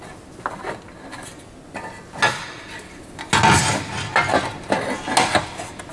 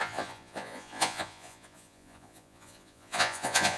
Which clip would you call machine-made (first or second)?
second